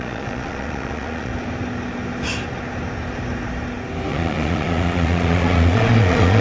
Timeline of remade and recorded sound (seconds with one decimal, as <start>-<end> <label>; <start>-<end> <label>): 0.0-1.3 remade; 1.3-4.1 recorded; 4.1-6.4 remade